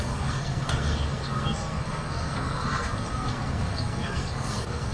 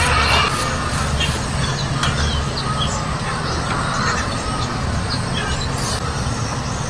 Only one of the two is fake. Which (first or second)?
first